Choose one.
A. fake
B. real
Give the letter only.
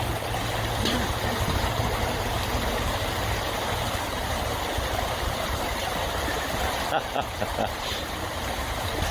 A